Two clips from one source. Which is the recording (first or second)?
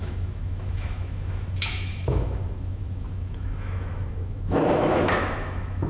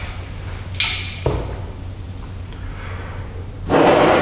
second